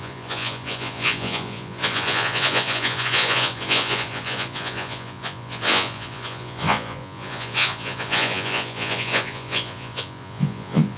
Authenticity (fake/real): fake